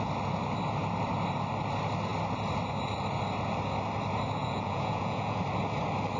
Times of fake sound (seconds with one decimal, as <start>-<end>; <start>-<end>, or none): 4.4-5.4